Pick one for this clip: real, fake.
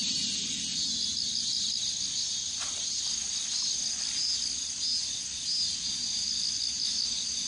real